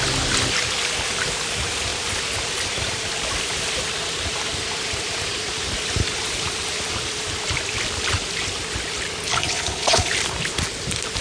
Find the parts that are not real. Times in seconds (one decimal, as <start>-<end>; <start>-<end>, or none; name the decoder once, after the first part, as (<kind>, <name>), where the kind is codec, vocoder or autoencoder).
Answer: 9.3-10.1 (codec, HILCodec)